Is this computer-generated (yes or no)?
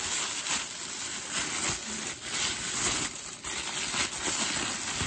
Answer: no